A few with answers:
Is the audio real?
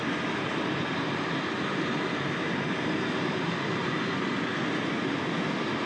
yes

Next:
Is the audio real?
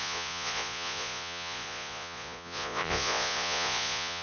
no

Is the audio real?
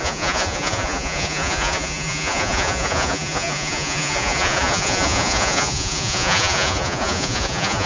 no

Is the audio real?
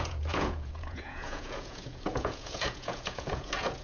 no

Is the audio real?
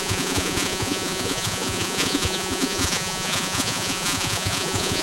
no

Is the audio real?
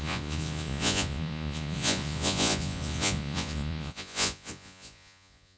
no